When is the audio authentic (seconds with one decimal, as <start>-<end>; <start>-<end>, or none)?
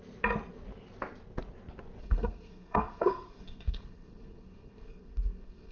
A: 0.0-2.0